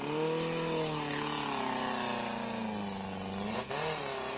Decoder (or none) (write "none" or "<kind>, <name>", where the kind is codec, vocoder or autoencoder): none